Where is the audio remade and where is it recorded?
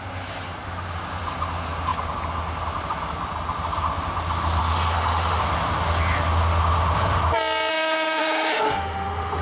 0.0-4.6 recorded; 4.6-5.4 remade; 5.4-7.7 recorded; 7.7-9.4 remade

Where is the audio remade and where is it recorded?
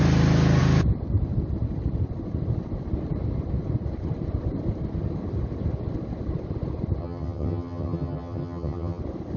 0.0-7.0 recorded; 7.0-9.0 remade; 9.0-9.4 recorded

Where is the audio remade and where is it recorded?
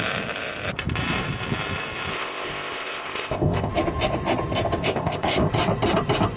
0.0-2.1 recorded; 2.1-3.7 remade; 3.7-4.8 recorded; 4.8-5.5 remade; 5.5-6.4 recorded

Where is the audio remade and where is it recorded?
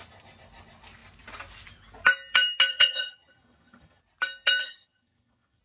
0.0-2.7 recorded; 2.7-4.0 remade; 4.0-4.6 recorded; 4.6-5.6 remade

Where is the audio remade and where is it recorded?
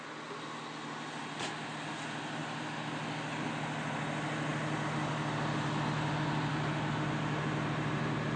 0.0-8.4 recorded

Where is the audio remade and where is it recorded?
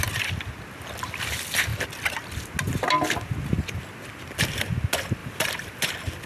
0.0-5.2 recorded; 5.2-5.8 remade; 5.8-6.3 recorded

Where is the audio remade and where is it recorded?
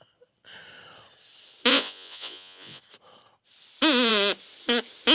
0.0-1.7 recorded; 1.7-2.8 remade; 2.8-5.1 recorded